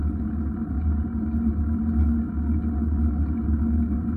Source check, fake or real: real